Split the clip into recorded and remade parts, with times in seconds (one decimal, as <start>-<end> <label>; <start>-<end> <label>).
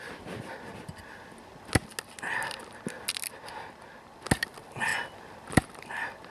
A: 0.0-6.3 recorded